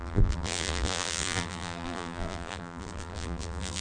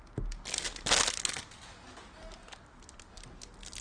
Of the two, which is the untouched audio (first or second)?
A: second